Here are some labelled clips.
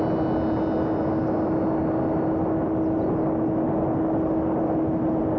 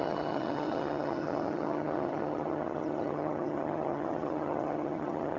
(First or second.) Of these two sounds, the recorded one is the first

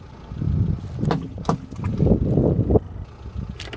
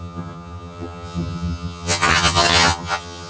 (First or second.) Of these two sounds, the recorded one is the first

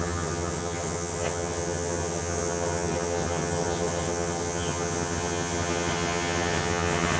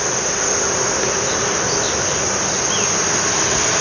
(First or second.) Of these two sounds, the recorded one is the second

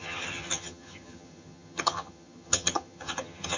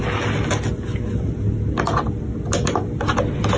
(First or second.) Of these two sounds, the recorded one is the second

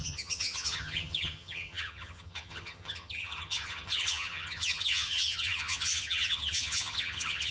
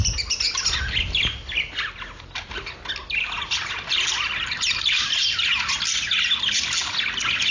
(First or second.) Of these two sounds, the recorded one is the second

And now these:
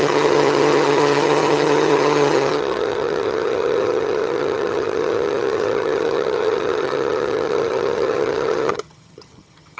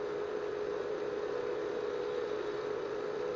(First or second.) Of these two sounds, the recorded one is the second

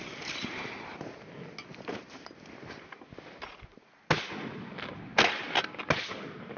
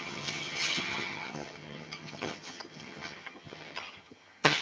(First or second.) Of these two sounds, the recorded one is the first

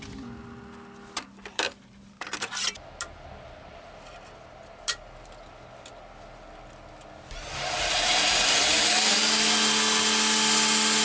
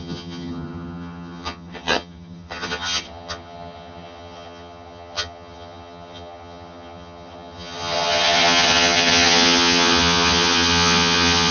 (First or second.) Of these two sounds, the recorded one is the first